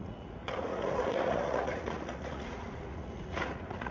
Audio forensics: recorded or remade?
remade